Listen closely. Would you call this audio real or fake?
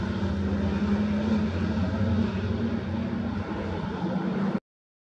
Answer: real